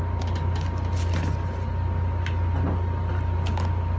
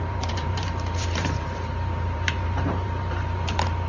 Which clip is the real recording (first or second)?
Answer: first